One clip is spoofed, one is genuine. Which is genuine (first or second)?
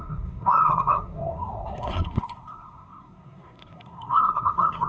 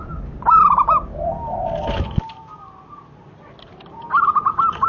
second